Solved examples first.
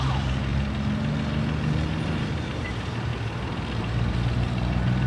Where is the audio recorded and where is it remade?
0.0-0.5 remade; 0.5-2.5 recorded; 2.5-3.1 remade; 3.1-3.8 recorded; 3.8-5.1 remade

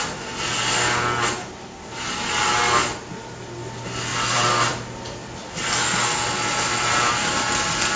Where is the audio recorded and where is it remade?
0.0-8.0 recorded